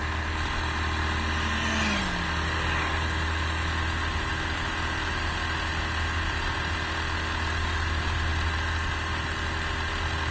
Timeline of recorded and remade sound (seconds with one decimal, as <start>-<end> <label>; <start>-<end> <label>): 0.0-10.3 recorded